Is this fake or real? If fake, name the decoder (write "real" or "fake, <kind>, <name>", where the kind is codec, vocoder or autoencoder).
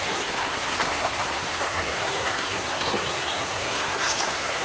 fake, codec, SNAC